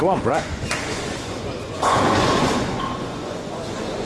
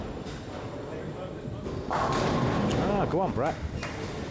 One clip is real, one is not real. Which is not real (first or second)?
first